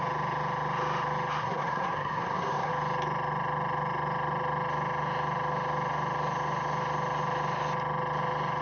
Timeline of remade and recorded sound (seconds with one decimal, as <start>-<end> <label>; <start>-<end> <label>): 0.0-1.4 recorded; 1.4-2.7 remade; 2.7-8.6 recorded